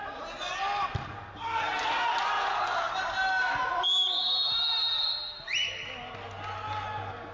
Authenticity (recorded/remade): recorded